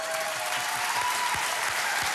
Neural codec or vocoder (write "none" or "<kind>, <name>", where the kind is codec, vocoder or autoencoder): none